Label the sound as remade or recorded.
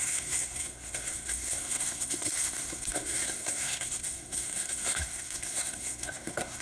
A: remade